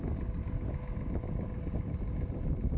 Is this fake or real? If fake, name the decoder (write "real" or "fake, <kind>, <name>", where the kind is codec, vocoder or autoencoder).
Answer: real